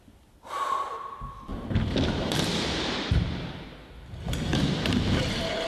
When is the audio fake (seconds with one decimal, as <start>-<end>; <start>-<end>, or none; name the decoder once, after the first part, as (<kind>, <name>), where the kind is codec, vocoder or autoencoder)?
1.5-3.7 (vocoder, BigVGAN v2); 4.5-5.2